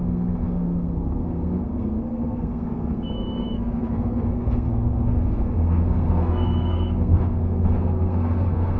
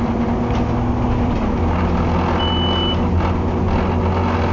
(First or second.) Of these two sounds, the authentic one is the second